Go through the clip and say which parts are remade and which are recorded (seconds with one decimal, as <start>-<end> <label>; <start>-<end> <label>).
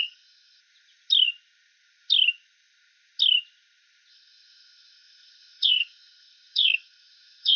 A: 0.0-0.6 remade; 0.6-4.1 recorded; 4.1-7.6 remade